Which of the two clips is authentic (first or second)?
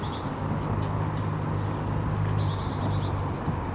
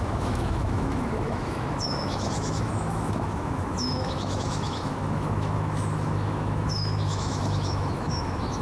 first